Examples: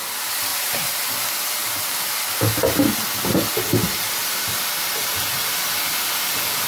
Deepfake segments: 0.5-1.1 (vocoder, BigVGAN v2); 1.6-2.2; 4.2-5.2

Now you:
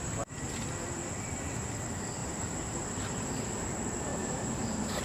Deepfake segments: 2.2-2.9 (vocoder, BigVGAN v2); 4.1-5.0

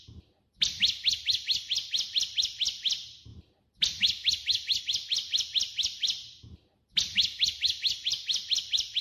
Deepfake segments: none

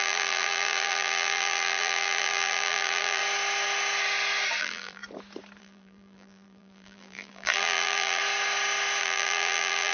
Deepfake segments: 0.0-3.2 (vocoder, BigVGAN v2); 4.6-5.0; 5.6-8.2; 9.0-9.9

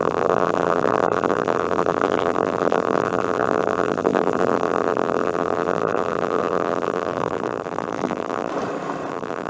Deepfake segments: 0.0-8.5 (vocoder, BigVGAN v2); 9.1-9.5